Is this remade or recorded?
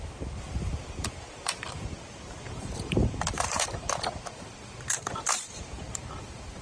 remade